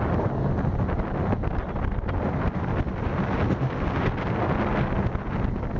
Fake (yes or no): no